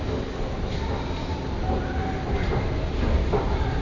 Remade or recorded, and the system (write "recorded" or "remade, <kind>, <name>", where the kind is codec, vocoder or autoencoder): recorded